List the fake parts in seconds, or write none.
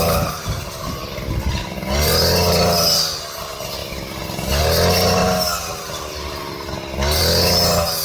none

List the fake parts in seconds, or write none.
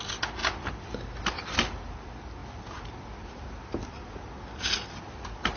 none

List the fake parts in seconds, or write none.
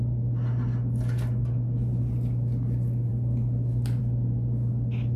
none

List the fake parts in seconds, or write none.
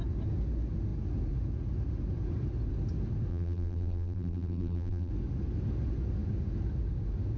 3.3-5.1 (vocoder, BigVGAN v2)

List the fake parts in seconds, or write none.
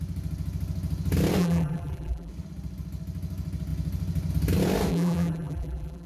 1.4-2.3 (vocoder, BigVGAN v2); 4.9-6.1